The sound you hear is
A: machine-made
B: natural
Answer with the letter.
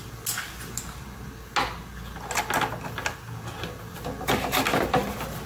B